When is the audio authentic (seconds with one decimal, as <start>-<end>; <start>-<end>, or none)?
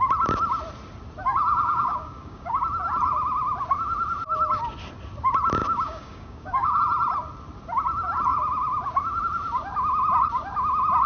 0.0-1.5; 2.6-5.6; 6.8-11.1